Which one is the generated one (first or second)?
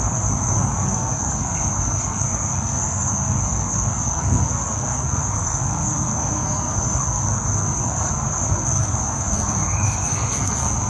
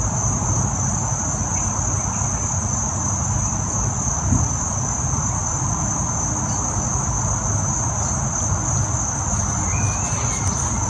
first